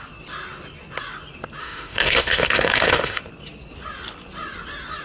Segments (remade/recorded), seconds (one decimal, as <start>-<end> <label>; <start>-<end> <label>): 0.0-1.6 recorded; 1.6-3.2 remade; 3.2-5.0 recorded